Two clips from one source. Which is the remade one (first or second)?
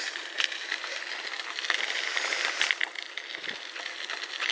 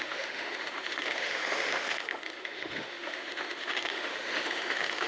second